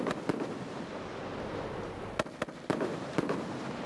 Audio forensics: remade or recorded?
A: recorded